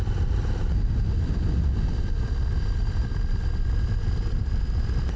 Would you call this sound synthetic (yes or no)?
no